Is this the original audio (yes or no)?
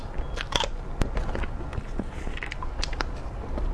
yes